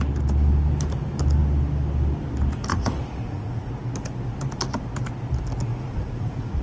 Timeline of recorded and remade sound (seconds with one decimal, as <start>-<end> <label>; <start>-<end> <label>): 0.0-2.7 recorded; 2.7-3.7 remade; 3.7-5.7 recorded; 5.7-6.6 remade